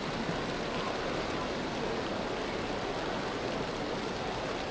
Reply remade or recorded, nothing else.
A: recorded